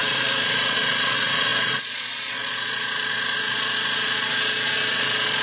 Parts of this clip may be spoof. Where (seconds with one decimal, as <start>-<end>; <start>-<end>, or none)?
0.0-5.4